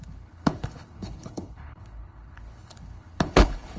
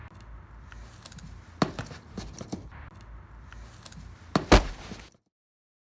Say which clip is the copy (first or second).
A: first